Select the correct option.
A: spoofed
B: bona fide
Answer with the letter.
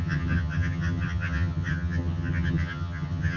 A